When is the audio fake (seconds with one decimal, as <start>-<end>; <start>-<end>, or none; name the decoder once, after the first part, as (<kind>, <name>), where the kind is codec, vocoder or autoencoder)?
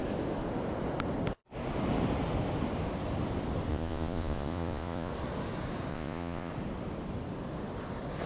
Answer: 3.7-5.1 (vocoder, Vocos); 5.9-6.5